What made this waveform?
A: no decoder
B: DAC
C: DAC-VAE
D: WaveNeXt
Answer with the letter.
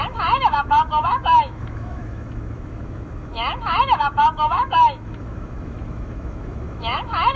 C